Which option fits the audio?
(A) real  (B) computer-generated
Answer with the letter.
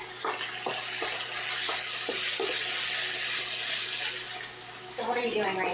A